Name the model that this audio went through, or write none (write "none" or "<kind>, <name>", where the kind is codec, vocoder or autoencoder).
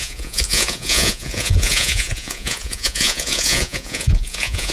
vocoder, Vocos